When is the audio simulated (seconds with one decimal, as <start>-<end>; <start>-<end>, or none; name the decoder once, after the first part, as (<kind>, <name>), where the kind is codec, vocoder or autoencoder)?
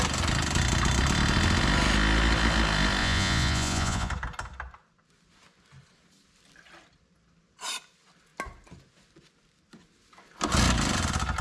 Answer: 3.0-4.1 (vocoder, Vocos)